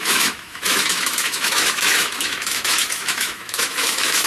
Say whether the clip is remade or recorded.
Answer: remade